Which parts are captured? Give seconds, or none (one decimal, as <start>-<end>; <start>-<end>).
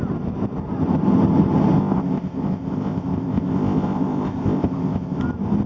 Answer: 0.0-1.8; 5.2-5.7